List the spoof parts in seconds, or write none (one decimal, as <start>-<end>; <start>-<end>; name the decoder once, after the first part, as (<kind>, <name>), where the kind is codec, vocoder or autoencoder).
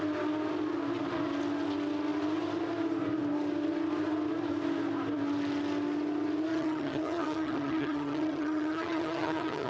6.5-9.7 (vocoder, HiFi-GAN)